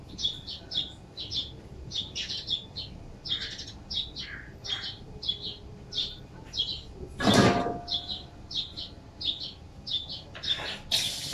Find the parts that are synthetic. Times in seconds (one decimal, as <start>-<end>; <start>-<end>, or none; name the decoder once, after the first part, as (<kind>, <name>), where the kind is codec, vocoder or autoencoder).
1.4-2.5 (vocoder, BigVGAN v2)